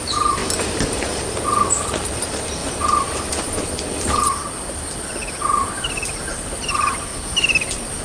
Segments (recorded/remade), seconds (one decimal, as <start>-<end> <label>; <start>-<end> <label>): 0.0-0.4 remade; 0.4-1.7 recorded; 1.7-7.1 remade; 7.1-8.0 recorded